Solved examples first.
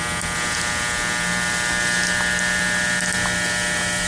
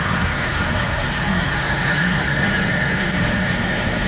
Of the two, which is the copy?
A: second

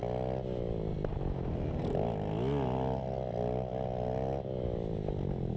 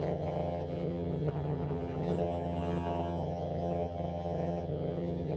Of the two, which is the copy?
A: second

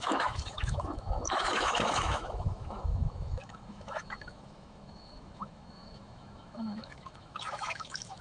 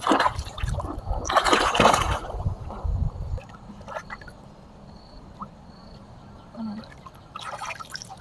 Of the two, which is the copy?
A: first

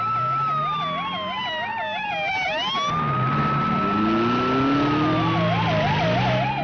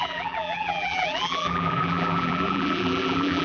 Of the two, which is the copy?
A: second